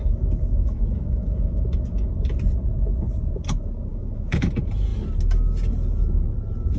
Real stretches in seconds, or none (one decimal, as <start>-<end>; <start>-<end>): 2.1-3.9; 4.5-6.8